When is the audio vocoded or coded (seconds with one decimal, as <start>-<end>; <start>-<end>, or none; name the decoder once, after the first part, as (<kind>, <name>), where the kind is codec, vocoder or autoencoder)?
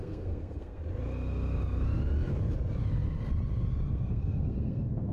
0.0-0.8 (codec, SNAC); 3.9-5.1